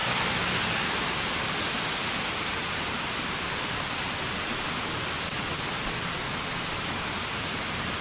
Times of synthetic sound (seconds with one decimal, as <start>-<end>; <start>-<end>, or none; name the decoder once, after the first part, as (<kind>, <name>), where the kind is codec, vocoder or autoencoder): none